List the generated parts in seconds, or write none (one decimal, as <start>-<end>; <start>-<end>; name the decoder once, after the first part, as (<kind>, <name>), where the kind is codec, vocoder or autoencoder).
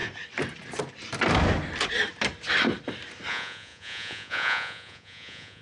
3.3-5.6 (vocoder, Vocos)